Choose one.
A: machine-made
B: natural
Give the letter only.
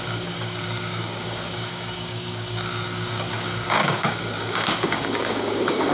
A